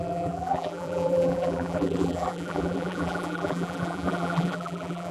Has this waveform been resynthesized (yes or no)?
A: yes